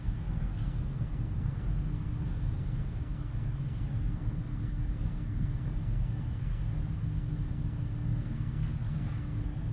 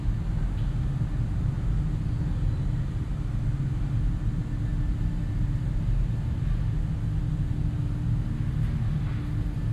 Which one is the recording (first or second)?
second